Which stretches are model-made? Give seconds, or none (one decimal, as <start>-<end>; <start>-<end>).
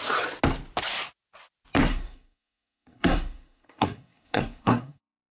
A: 1.9-5.3